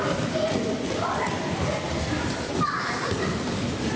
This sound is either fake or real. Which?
real